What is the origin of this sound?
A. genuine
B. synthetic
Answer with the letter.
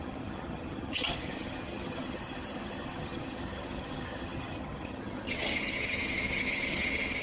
B